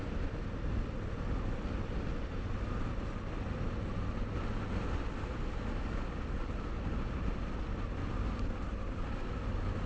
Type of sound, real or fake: real